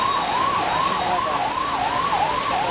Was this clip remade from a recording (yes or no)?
no